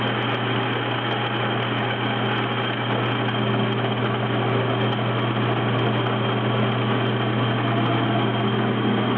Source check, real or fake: real